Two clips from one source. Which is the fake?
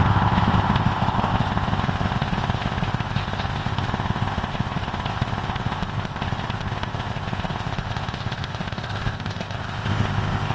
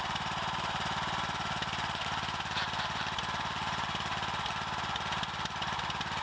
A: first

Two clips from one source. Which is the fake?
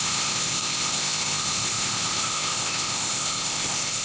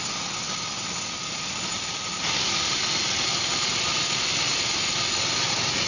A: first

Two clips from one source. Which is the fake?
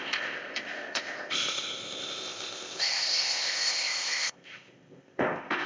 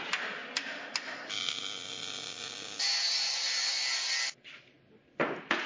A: first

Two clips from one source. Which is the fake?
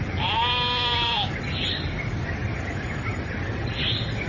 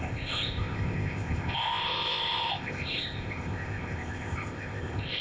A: second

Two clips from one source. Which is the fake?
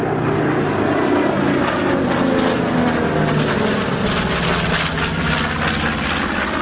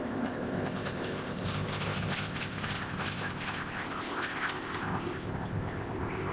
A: second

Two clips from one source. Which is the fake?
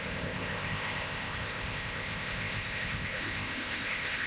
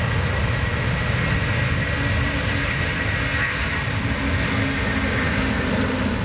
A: first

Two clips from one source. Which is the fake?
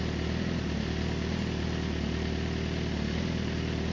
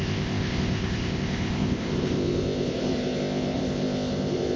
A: second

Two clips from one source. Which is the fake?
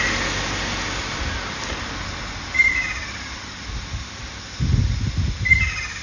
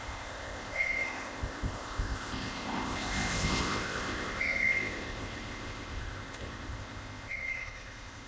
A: second